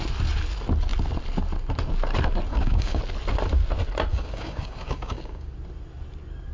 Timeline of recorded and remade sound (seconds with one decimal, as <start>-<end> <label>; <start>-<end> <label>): 0.0-2.5 recorded; 2.5-3.0 remade; 3.0-4.1 recorded; 4.1-5.5 remade; 5.5-6.5 recorded